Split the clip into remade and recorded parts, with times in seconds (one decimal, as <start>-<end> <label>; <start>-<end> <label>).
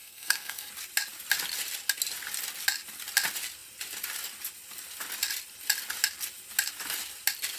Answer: 0.0-0.7 remade; 0.7-7.6 recorded